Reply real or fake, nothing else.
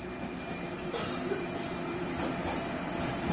real